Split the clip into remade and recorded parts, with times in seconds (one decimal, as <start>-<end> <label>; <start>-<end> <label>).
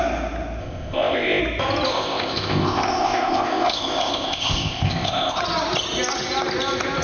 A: 0.0-0.6 recorded; 0.6-1.4 remade; 1.4-1.9 recorded; 1.9-5.4 remade; 5.4-7.0 recorded